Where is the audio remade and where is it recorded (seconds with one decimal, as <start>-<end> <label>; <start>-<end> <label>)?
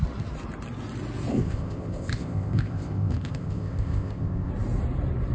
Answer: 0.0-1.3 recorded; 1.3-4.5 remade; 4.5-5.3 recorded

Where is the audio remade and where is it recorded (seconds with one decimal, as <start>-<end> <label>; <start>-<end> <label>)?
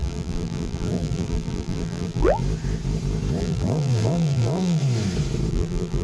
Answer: 0.0-2.4 remade; 2.4-3.4 recorded; 3.4-4.8 remade; 4.8-5.5 recorded; 5.5-6.0 remade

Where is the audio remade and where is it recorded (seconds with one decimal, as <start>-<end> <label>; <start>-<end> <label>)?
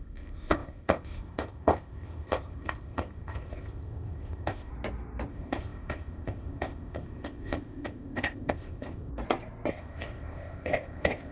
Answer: 0.0-4.7 remade; 4.7-5.3 recorded; 5.3-9.1 remade; 9.1-9.7 recorded; 9.7-11.3 remade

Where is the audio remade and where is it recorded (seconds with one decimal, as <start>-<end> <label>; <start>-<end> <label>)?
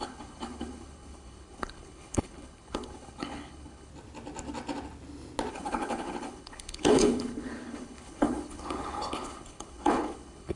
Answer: 0.0-3.9 remade; 3.9-5.5 recorded; 5.5-10.6 remade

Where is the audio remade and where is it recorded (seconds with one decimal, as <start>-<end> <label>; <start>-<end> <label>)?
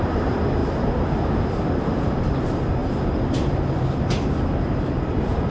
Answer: 0.0-2.8 remade; 2.8-3.4 recorded; 3.4-5.5 remade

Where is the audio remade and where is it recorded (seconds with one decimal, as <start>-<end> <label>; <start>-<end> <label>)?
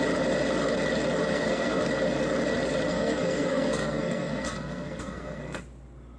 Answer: 0.0-1.2 recorded; 1.2-1.8 remade; 1.8-2.9 recorded; 2.9-5.6 remade; 5.6-6.2 recorded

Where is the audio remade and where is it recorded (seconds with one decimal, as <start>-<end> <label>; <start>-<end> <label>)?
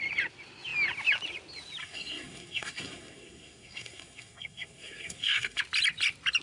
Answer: 0.0-1.8 recorded; 1.8-5.6 remade; 5.6-6.4 recorded